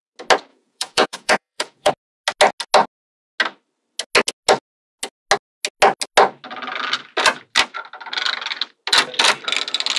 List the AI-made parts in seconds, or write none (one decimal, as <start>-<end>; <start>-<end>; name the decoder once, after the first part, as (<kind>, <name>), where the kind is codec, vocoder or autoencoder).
0.5-1.9 (vocoder, Vocos)